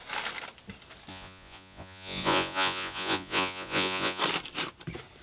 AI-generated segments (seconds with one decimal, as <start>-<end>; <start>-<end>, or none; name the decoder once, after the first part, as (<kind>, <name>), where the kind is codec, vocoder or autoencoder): 1.1-4.2 (vocoder, Vocos)